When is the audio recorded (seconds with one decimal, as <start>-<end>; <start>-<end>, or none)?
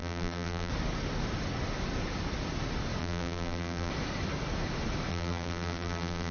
0.7-3.0; 3.9-5.1